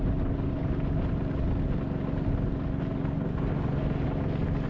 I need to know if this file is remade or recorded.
recorded